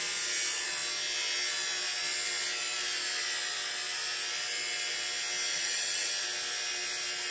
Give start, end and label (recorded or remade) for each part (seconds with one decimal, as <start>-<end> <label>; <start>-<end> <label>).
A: 0.0-5.5 recorded; 5.5-6.1 remade; 6.1-7.3 recorded